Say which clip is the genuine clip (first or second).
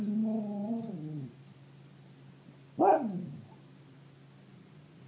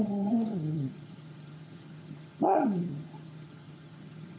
first